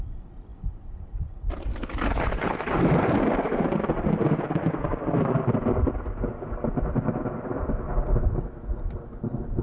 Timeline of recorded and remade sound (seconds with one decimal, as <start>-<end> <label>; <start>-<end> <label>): 0.0-9.6 recorded